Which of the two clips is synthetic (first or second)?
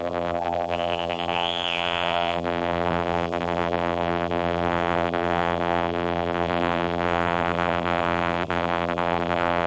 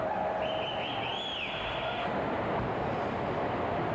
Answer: first